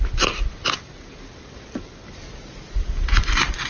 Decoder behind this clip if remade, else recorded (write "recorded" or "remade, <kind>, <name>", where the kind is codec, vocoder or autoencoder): recorded